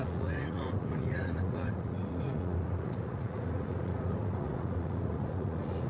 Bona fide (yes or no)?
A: no